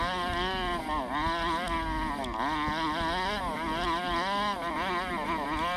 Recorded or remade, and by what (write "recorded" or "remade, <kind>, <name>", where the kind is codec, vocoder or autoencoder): recorded